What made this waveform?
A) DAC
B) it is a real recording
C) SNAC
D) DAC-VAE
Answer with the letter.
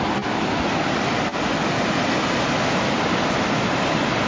B